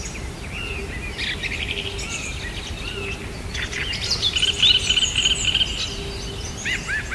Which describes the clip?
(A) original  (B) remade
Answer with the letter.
A